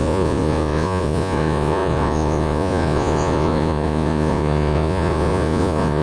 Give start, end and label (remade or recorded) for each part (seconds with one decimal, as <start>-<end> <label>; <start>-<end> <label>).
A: 0.0-6.0 remade